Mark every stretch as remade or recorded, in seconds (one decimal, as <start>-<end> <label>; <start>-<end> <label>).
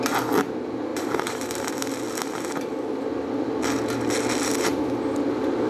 0.0-0.9 recorded; 0.9-1.7 remade; 1.7-5.7 recorded